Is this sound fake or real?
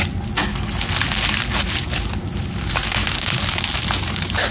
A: real